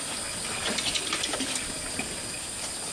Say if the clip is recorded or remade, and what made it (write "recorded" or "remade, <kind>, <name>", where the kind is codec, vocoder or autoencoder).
recorded